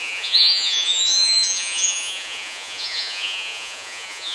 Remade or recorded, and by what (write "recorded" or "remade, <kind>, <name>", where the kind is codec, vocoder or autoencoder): remade, vocoder, Vocos